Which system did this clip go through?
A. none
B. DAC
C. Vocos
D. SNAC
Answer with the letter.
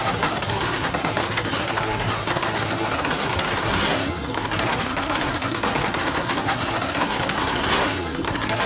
D